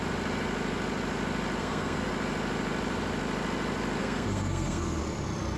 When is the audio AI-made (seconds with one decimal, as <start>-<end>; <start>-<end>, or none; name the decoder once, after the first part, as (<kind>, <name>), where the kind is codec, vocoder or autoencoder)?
1.6-2.1 (codec, SNAC); 4.0-5.0